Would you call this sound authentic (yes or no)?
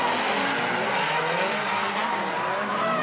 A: yes